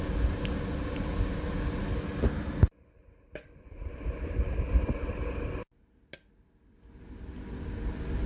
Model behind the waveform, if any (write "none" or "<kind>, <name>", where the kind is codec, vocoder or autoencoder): none